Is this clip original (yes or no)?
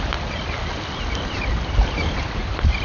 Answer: yes